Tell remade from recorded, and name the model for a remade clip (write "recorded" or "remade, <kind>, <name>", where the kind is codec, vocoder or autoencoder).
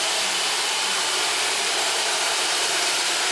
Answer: remade, vocoder, BigVGAN v2